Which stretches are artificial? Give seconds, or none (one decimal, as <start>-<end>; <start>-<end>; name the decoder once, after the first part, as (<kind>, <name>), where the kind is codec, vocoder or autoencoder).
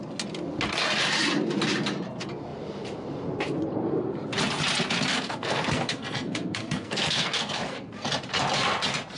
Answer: 5.1-8.1 (codec, SNAC)